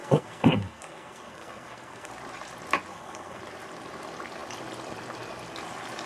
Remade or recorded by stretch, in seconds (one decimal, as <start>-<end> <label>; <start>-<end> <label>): 0.0-2.1 remade; 2.1-2.9 recorded; 2.9-3.4 remade; 3.4-6.1 recorded